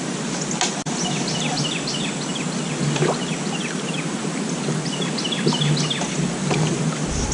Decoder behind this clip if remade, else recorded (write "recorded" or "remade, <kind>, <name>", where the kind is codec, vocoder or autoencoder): recorded